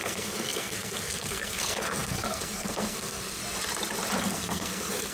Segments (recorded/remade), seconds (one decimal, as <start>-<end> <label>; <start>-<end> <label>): 0.0-3.4 remade; 3.4-4.2 recorded; 4.2-5.1 remade